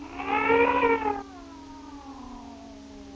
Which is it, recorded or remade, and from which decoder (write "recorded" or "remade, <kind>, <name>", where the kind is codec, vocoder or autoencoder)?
recorded